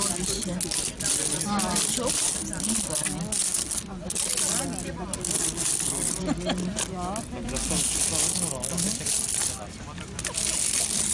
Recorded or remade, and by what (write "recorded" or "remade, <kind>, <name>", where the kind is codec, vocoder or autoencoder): recorded